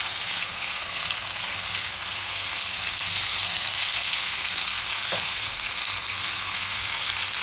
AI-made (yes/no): yes